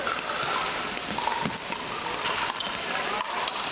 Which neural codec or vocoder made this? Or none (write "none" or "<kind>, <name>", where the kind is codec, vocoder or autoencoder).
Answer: none